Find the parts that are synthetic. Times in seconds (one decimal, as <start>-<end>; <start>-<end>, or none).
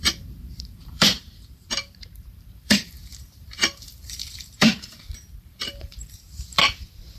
0.0-7.2